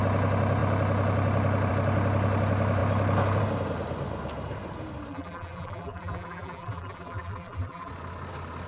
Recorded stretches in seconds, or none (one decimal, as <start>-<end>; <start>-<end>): 0.0-5.1; 7.9-8.7